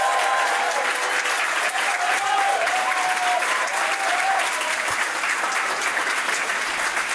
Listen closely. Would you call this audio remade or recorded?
recorded